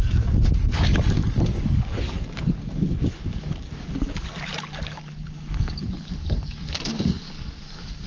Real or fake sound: fake